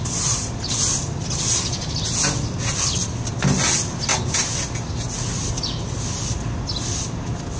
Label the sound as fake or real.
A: real